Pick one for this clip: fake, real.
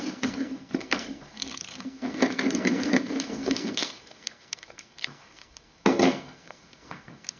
fake